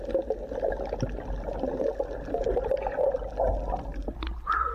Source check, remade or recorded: recorded